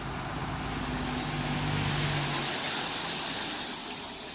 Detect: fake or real real